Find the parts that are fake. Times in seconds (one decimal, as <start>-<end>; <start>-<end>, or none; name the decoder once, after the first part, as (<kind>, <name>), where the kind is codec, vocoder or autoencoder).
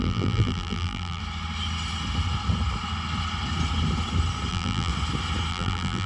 0.0-1.2 (vocoder, BigVGAN v2); 4.5-4.9; 5.5-6.1